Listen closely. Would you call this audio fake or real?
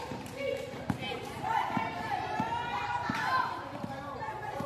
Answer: fake